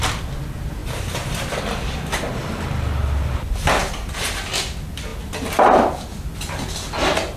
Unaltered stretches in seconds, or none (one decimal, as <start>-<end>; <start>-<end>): 0.0-7.4